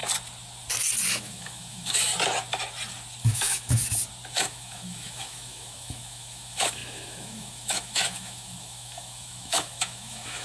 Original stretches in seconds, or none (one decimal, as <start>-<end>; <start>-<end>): 0.0-1.1; 2.1-3.2; 3.8-4.3